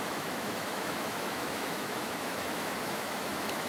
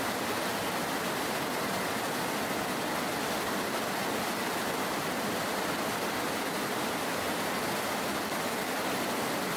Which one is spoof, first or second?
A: first